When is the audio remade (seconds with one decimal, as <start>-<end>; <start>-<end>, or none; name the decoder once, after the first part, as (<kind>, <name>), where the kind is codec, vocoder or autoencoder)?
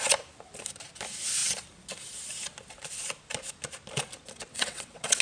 4.5-5.2 (vocoder, WaveNeXt)